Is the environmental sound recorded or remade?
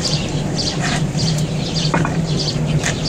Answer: remade